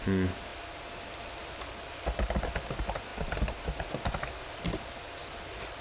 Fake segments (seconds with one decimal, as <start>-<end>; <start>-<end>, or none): none

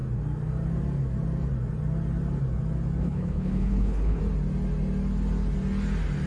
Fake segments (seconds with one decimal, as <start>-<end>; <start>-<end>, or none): 3.0-4.2

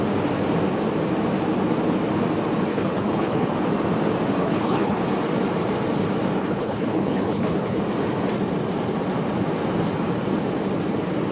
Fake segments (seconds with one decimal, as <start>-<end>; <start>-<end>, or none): 2.7-3.5; 4.4-5.0; 6.4-7.8

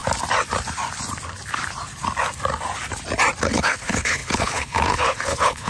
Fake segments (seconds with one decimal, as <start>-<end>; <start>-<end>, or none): 3.4-5.7

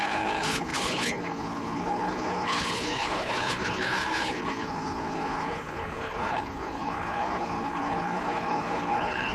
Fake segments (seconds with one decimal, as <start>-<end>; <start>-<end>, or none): 0.0-9.3